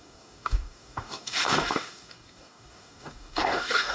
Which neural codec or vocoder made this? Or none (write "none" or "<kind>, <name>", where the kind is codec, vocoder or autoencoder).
codec, DAC